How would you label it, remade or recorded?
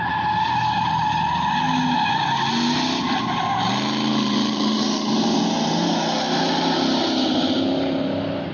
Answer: recorded